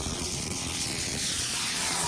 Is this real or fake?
fake